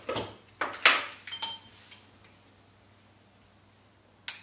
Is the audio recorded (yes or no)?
yes